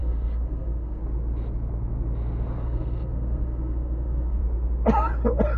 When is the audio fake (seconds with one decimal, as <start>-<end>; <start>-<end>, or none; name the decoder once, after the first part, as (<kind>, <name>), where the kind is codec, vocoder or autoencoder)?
0.0-1.0 (codec, SNAC); 2.6-4.4